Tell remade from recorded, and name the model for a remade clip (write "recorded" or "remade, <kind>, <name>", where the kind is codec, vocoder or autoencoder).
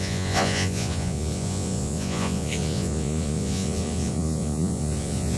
remade, vocoder, Vocos